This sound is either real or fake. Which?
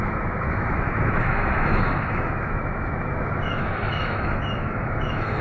fake